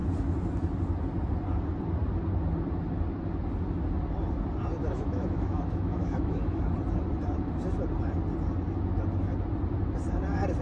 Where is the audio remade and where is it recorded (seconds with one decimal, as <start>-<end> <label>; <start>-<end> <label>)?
0.0-4.8 recorded; 4.8-6.6 remade; 6.6-10.6 recorded